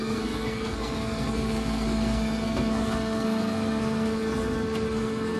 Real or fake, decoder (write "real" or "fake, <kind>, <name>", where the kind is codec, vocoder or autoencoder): fake, codec, SNAC